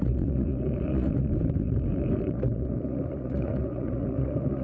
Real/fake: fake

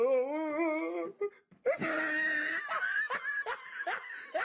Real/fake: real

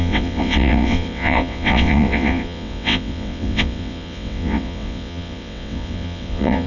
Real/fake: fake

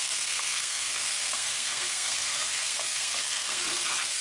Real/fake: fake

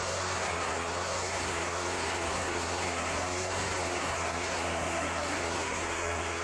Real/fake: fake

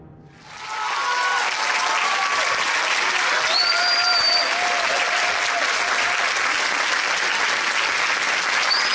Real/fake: real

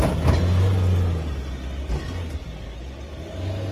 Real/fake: real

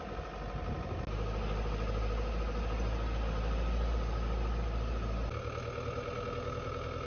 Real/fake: real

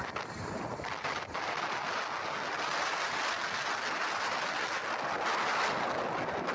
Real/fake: real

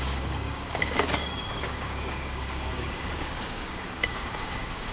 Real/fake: fake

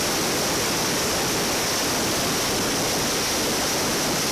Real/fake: real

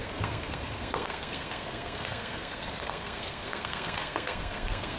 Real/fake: fake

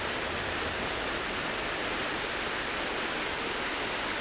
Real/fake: real